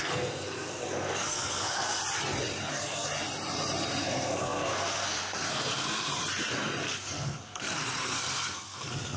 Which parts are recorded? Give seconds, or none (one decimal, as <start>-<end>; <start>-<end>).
2.0-2.7; 3.1-4.0; 6.1-6.8